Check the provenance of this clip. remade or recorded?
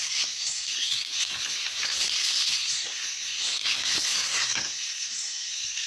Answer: remade